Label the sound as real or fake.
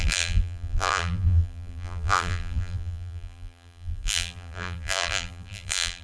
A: fake